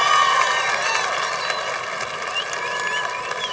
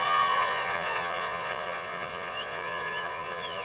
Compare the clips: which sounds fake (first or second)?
second